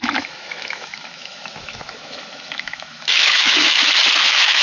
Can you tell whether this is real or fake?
fake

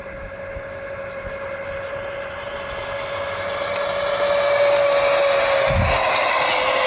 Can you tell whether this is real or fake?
real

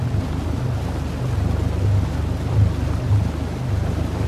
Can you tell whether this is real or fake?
real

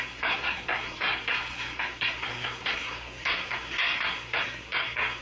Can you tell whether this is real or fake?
fake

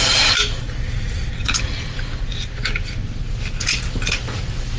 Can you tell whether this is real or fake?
real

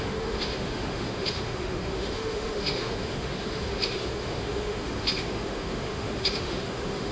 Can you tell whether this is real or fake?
fake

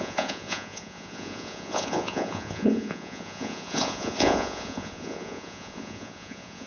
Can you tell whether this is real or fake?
fake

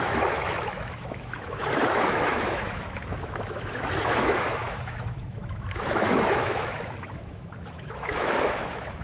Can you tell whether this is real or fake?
fake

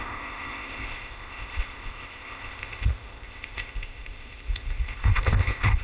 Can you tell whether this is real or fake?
fake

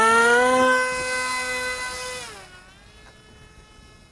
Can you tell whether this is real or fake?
real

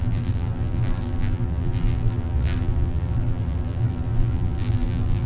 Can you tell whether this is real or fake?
fake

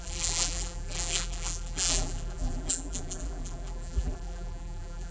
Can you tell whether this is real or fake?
fake